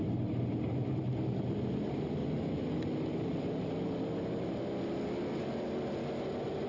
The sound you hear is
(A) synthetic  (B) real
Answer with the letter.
B